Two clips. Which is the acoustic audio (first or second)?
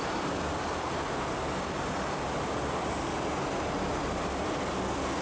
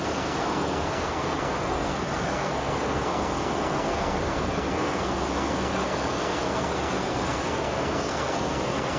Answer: first